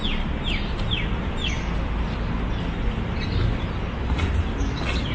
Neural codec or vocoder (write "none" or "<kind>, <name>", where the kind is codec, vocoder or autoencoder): none